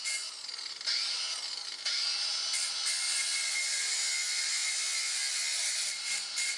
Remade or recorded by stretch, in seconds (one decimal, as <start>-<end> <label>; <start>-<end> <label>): 0.0-6.6 recorded